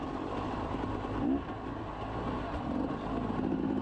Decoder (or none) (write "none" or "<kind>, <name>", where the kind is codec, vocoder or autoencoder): none